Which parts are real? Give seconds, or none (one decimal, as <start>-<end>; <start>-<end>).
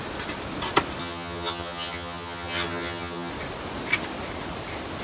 0.0-1.0; 3.3-5.0